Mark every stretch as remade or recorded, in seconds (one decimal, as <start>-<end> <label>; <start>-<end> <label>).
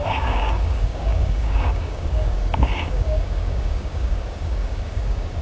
0.0-5.4 remade